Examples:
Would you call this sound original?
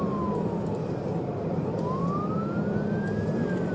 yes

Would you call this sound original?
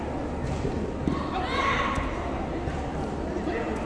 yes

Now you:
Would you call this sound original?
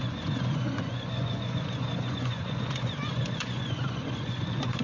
no